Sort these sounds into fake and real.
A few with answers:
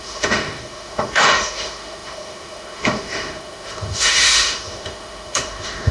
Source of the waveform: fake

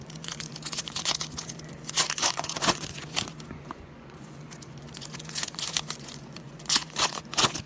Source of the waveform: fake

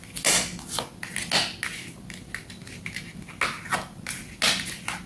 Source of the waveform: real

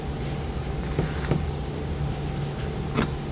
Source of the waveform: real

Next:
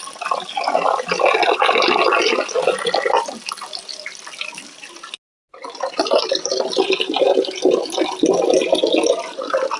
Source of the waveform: real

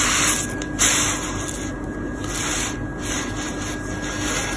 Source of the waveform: real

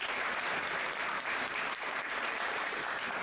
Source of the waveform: fake